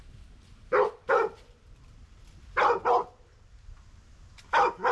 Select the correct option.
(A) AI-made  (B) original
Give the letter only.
B